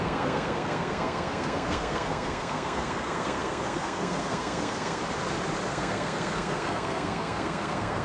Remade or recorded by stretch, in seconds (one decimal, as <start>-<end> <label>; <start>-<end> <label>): 0.0-5.0 remade; 5.0-5.7 recorded; 5.7-8.0 remade